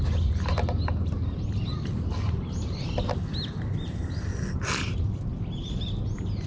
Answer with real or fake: real